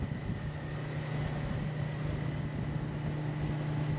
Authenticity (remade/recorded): recorded